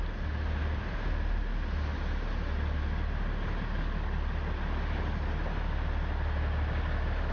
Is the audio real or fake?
real